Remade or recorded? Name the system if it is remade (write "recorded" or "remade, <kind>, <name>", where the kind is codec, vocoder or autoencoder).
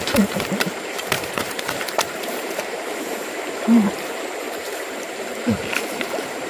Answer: remade, vocoder, BigVGAN v2